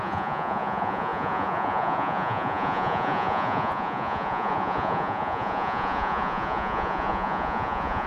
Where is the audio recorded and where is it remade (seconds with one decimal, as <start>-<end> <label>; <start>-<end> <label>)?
0.0-8.1 remade

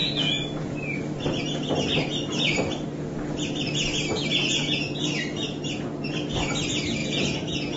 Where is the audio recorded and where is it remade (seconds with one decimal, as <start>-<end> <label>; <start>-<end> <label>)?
0.0-1.0 remade; 1.0-4.3 recorded; 4.3-5.0 remade; 5.0-7.0 recorded; 7.0-7.8 remade

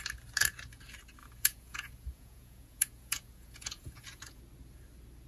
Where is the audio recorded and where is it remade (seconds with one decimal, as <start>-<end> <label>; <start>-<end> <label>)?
0.0-1.2 recorded; 1.2-4.4 remade; 4.4-5.3 recorded

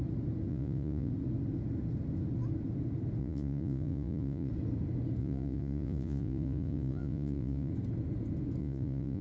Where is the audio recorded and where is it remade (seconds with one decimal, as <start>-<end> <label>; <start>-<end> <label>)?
0.0-0.5 recorded; 0.5-1.1 remade; 1.1-3.2 recorded; 3.2-4.5 remade; 4.5-5.2 recorded; 5.2-7.7 remade; 7.7-8.6 recorded; 8.6-9.2 remade

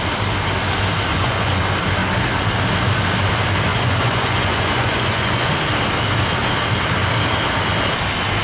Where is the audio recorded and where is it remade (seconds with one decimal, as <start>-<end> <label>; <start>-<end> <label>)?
0.0-1.1 recorded; 1.1-1.6 remade; 1.6-3.7 recorded; 3.7-5.5 remade; 5.5-8.4 recorded

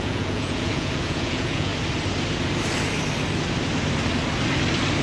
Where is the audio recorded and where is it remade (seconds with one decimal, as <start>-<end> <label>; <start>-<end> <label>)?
0.0-1.7 remade; 1.7-5.0 recorded

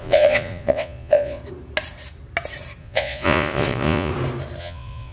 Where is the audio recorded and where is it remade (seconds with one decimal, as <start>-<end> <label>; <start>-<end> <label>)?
0.0-1.4 remade; 1.4-2.8 recorded; 2.8-4.1 remade; 4.1-4.6 recorded; 4.6-5.1 remade